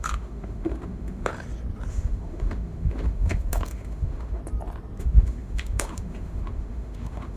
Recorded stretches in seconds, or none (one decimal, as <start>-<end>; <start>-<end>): 1.3-1.9; 4.4-5.0